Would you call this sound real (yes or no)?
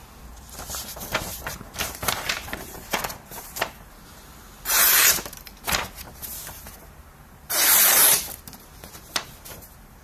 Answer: no